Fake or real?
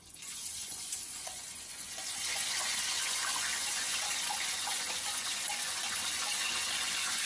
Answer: fake